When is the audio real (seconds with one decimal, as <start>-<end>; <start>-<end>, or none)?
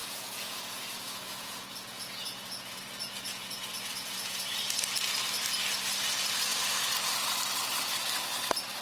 2.8-3.3; 4.6-8.8